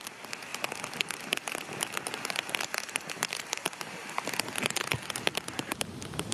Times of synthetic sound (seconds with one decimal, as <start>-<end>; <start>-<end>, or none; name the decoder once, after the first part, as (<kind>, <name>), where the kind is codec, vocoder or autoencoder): 0.5-2.6 (vocoder, BigVGAN v2); 5.3-6.3